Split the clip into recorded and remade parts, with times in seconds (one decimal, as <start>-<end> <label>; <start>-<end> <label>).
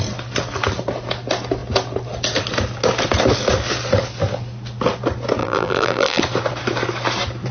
0.0-5.4 recorded; 5.4-6.2 remade; 6.2-7.5 recorded